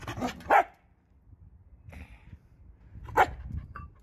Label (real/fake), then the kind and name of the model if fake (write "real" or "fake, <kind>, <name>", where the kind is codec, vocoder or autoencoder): real